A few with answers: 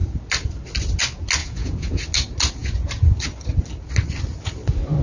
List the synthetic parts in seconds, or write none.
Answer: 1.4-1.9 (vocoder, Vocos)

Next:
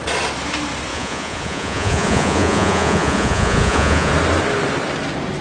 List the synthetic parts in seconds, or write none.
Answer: 0.9-4.1 (vocoder, Vocos)